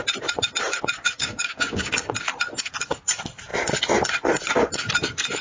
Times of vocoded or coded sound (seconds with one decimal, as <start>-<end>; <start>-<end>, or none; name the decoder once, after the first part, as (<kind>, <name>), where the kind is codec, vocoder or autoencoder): 1.2-1.9 (codec, DAC)